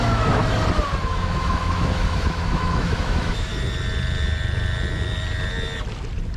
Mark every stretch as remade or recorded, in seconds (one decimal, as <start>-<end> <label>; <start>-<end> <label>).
0.0-0.4 remade; 0.4-1.0 recorded; 1.0-3.5 remade; 3.5-6.4 recorded